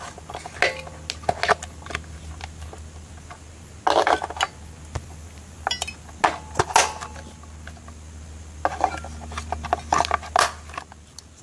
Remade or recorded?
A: recorded